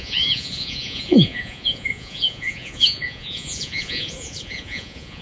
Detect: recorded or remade remade